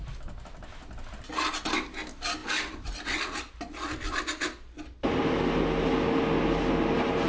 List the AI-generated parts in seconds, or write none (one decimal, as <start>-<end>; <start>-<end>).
none